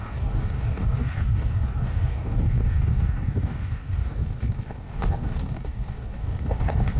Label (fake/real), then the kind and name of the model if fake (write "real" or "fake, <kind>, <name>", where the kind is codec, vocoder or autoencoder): fake, codec, DAC